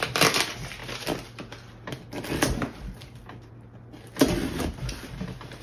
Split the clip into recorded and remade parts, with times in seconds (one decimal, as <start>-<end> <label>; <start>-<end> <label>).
0.0-5.6 recorded